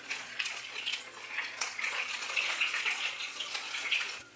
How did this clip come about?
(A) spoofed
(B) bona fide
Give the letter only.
A